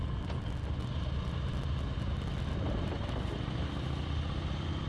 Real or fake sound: real